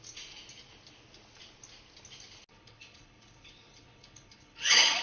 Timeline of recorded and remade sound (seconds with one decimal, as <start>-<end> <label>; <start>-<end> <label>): 0.0-2.5 recorded; 2.5-5.0 remade